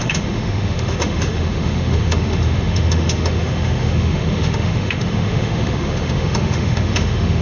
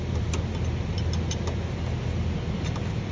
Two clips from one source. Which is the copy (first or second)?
first